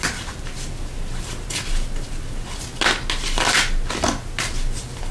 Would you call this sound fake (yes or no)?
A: no